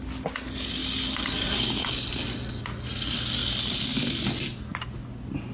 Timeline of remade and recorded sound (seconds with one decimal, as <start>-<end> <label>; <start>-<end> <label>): 0.0-5.5 recorded